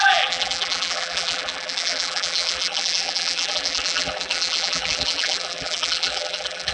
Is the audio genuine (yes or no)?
no